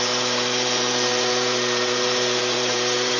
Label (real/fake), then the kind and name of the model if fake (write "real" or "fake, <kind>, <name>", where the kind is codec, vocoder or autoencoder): fake, vocoder, BigVGAN v2